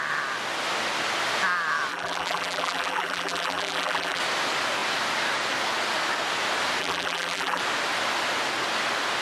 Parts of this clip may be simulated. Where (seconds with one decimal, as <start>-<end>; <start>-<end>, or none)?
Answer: 1.9-4.2; 6.8-7.6